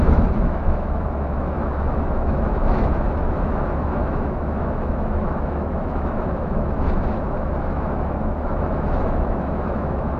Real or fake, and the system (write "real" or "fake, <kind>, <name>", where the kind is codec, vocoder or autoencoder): fake, autoencoder, DAC-VAE